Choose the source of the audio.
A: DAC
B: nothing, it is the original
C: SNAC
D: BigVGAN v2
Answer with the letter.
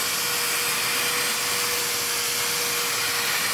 B